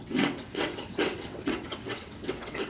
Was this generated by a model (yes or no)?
yes